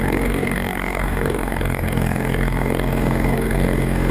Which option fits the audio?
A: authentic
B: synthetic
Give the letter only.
B